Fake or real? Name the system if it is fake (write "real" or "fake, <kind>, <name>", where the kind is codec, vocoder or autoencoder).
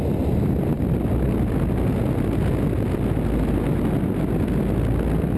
real